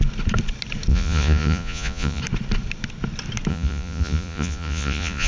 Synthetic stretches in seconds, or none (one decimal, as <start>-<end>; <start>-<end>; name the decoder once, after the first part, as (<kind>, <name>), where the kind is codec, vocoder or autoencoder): 0.9-2.2 (vocoder, Vocos); 3.5-5.3